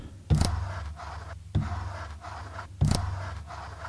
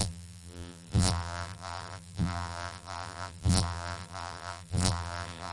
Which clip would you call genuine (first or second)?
first